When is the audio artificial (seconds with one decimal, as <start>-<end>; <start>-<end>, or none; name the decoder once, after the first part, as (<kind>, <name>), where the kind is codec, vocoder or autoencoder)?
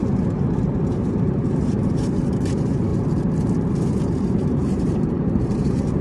0.6-2.9 (vocoder, BigVGAN v2); 3.8-6.0